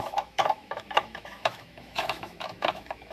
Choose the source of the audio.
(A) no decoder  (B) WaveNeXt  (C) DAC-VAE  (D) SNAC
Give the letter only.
C